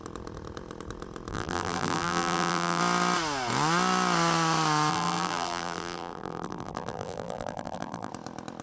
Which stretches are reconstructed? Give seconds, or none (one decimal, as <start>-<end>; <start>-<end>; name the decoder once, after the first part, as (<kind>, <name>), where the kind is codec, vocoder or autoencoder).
1.3-2.8 (vocoder, BigVGAN v2); 4.9-8.1